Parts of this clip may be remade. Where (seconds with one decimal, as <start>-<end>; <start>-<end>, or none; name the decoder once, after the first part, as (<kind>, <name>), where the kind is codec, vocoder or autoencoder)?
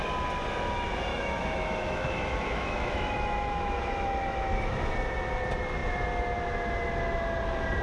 1.1-4.9 (autoencoder, DAC-VAE)